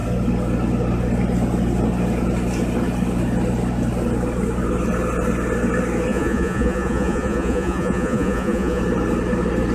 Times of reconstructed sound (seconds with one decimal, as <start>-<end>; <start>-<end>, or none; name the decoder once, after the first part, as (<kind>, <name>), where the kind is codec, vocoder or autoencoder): 6.1-8.8 (vocoder, Vocos)